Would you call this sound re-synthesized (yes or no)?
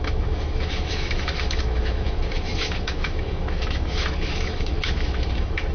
yes